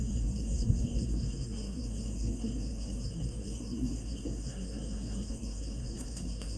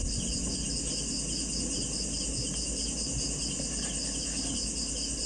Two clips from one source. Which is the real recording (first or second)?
second